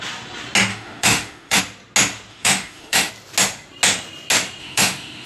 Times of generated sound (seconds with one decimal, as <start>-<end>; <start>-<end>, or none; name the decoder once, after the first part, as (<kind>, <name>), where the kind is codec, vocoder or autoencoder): 0.7-1.6 (autoencoder, DAC-VAE); 2.3-3.1; 4.6-5.3